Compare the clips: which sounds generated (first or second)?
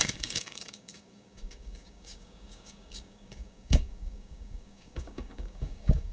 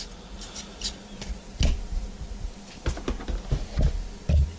first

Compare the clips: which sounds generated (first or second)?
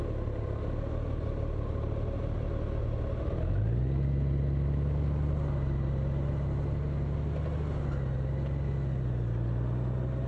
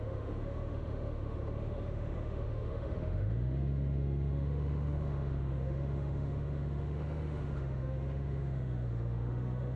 second